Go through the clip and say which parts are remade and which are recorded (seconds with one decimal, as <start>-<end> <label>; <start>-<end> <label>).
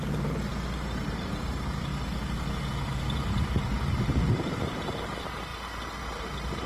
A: 0.0-1.9 remade; 1.9-3.6 recorded; 3.6-5.5 remade; 5.5-6.2 recorded; 6.2-6.7 remade